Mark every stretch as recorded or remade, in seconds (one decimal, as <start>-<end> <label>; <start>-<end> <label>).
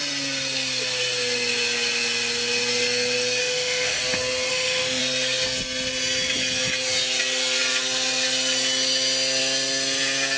0.0-3.4 recorded; 3.4-4.0 remade; 4.0-4.5 recorded; 4.5-5.0 remade; 5.0-10.4 recorded